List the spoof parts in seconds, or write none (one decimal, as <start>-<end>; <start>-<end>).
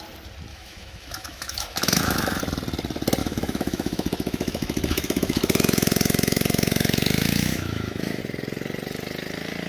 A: 0.5-2.4; 3.2-8.2